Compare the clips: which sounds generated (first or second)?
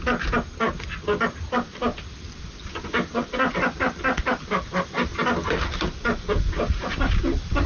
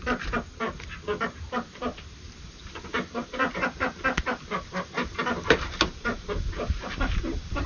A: second